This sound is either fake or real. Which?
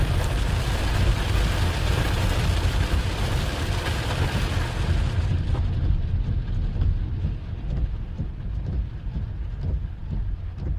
real